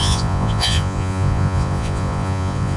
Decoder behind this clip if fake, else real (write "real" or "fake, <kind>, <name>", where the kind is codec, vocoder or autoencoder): fake, vocoder, Vocos